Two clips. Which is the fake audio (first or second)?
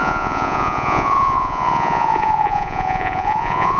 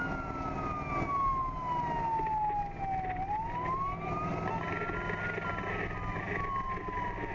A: first